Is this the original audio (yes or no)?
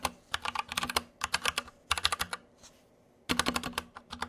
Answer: yes